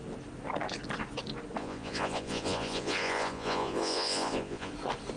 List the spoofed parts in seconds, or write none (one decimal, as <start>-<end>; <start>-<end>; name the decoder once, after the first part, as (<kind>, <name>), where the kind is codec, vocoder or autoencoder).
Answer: 1.6-4.7 (vocoder, Vocos)

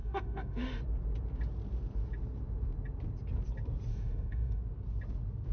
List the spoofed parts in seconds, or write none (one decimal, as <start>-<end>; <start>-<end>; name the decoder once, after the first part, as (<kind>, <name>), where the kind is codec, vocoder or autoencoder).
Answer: 0.0-0.8 (autoencoder, DAC-VAE); 3.9-4.6

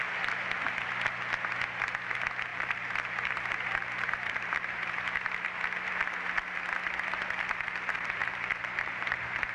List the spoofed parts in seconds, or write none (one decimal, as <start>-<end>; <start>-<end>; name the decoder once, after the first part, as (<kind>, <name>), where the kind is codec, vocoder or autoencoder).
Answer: 2.5-4.9 (vocoder, BigVGAN v2); 8.2-9.5

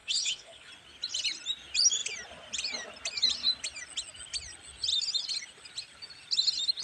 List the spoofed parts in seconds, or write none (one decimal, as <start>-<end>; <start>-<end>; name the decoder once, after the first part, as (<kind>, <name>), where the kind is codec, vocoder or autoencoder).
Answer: 0.0-0.7 (codec, HILCodec)

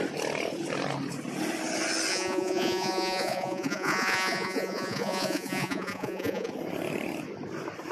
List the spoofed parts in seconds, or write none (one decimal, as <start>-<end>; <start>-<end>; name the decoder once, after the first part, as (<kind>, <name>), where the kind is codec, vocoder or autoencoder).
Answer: 2.1-6.5 (vocoder, Vocos)

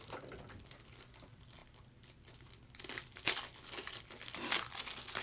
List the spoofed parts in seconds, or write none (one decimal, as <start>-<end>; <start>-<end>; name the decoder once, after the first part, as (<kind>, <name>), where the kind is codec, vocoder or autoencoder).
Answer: none

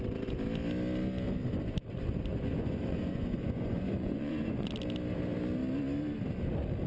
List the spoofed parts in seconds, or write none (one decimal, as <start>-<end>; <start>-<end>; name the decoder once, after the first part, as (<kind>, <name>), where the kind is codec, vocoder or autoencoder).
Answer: 2.3-4.7 (vocoder, Vocos)

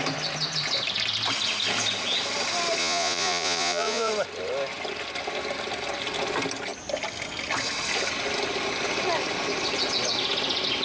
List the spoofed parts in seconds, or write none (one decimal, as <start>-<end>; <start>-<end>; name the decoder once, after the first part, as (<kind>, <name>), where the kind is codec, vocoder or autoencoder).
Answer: 2.8-4.1 (vocoder, Vocos)